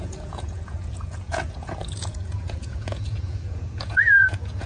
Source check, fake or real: fake